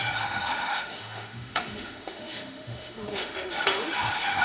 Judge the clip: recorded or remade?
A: remade